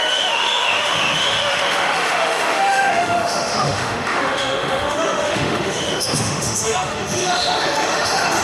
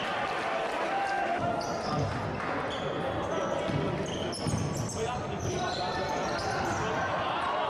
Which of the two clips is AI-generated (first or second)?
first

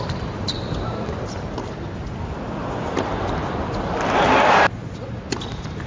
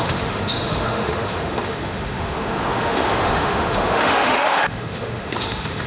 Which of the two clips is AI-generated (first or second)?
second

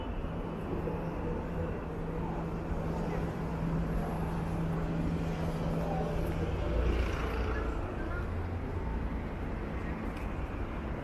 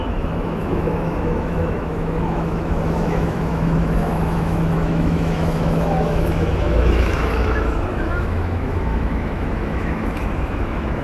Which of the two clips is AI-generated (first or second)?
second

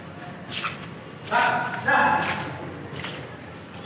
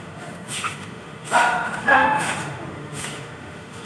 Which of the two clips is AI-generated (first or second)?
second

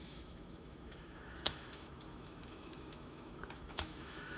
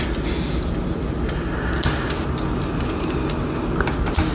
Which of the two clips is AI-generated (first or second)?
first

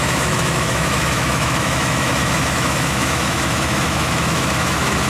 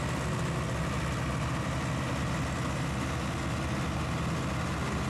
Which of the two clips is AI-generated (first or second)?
first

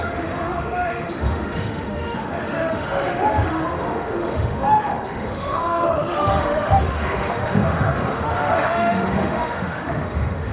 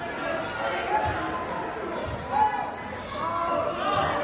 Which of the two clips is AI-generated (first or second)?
first